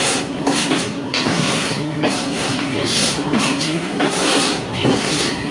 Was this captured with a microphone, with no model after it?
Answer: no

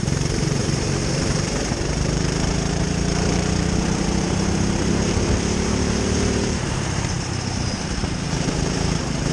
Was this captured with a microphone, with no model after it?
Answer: no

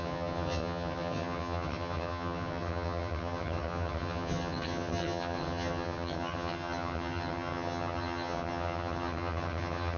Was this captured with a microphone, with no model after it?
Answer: no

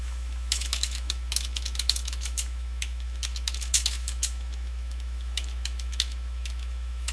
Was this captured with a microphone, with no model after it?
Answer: no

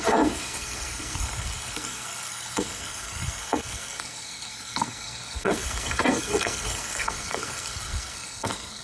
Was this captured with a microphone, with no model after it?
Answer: no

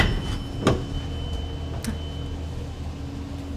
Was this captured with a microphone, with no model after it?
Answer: yes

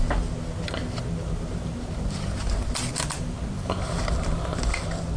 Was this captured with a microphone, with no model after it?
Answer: yes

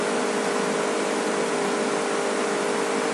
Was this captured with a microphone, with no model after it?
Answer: yes